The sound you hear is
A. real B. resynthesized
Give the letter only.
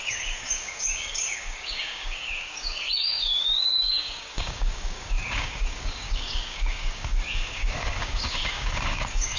B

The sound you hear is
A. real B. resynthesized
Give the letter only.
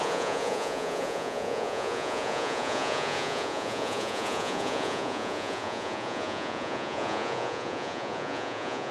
B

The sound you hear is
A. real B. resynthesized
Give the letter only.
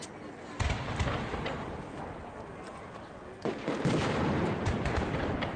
A